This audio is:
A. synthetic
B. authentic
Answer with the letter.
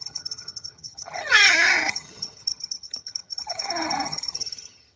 A